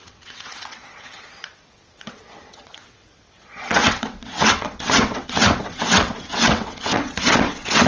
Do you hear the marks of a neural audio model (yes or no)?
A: yes